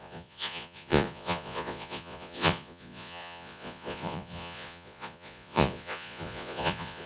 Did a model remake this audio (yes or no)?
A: yes